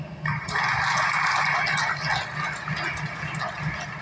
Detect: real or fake real